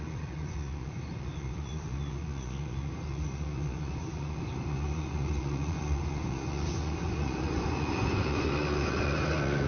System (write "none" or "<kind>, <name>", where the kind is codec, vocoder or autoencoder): vocoder, Vocos